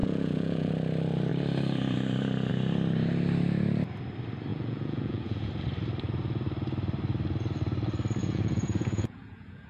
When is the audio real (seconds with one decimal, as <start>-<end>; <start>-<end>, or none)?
0.7-4.5; 5.5-8.2